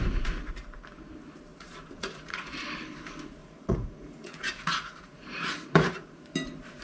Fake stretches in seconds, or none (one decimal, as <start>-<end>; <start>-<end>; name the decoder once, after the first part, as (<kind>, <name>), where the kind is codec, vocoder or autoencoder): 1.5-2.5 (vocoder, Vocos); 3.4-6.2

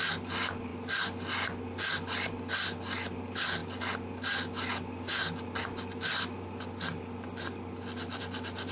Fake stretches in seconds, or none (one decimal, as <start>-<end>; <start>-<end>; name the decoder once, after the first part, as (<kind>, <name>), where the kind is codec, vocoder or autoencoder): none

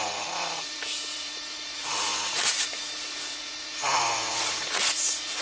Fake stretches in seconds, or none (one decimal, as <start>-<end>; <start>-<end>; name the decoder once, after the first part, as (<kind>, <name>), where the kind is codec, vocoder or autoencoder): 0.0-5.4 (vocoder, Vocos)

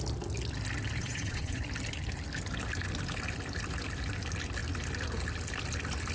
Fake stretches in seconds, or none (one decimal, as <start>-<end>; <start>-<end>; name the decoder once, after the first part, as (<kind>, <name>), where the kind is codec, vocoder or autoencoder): 1.0-1.6 (vocoder, Vocos)

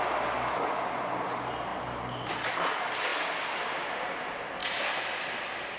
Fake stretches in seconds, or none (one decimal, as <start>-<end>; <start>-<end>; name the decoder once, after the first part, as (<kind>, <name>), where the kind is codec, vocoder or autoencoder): none

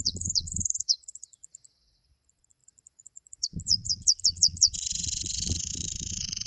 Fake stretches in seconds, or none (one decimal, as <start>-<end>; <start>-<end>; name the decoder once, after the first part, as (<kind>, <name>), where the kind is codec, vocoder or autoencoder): 0.0-6.5 (vocoder, Vocos)

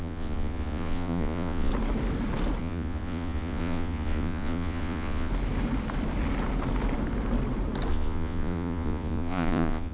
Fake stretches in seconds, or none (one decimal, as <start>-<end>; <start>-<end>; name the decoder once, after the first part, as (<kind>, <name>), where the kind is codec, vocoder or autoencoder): 0.0-1.7 (vocoder, Vocos); 2.6-5.3; 7.9-9.9